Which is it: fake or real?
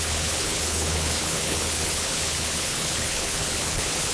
fake